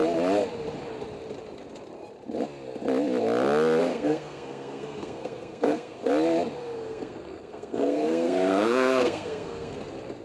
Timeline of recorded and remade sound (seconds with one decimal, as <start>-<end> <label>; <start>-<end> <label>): 0.0-3.8 recorded; 3.8-6.1 remade; 6.1-6.6 recorded; 6.6-9.7 remade; 9.7-10.2 recorded

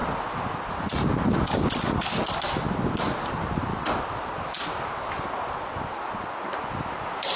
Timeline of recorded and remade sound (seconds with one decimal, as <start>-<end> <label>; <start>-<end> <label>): 0.0-7.4 recorded